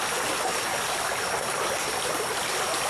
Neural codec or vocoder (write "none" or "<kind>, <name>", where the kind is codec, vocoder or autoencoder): none